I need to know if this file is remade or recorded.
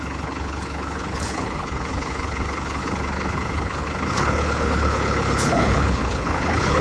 remade